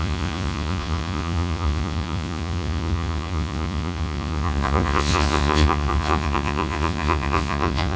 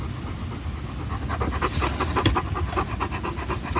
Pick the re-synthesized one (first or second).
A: first